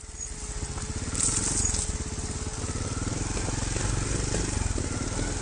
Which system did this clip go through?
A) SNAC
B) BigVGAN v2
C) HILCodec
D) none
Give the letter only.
D